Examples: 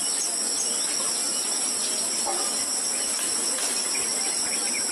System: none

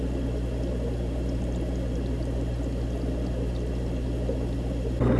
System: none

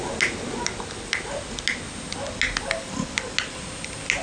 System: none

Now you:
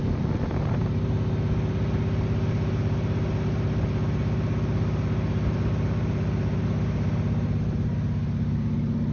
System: none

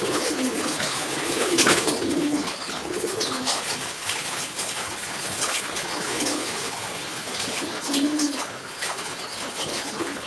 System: codec, HILCodec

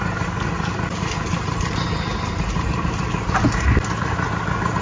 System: none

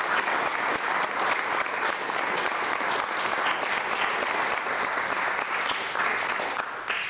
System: none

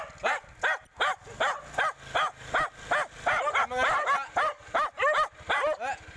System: none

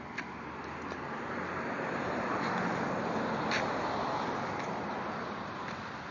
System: none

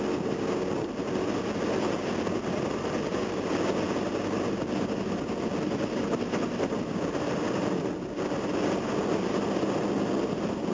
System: none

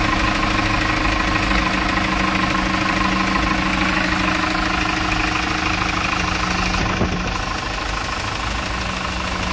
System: none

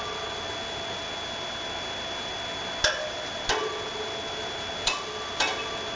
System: none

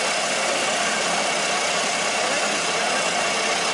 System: none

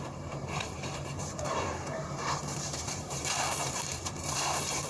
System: vocoder, BigVGAN v2